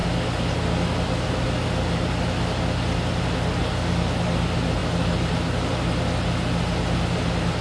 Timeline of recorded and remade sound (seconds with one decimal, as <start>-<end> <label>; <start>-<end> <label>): 0.0-7.6 recorded